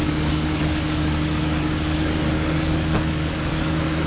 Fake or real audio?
fake